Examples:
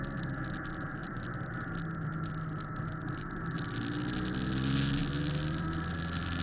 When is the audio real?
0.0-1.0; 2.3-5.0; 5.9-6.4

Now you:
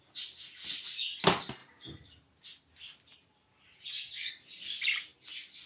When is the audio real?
0.0-5.7